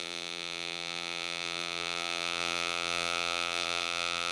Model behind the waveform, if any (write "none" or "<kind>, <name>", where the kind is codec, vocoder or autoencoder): vocoder, BigVGAN v2